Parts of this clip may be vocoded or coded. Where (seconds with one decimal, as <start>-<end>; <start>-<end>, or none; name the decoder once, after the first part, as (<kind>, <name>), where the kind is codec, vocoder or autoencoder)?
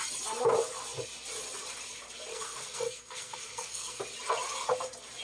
2.3-4.0 (codec, SNAC)